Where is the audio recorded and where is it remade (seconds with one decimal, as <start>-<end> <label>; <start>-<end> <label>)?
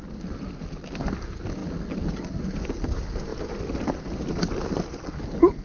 0.0-5.6 recorded